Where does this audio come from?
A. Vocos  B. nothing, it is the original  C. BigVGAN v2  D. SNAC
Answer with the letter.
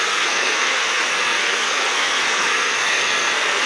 D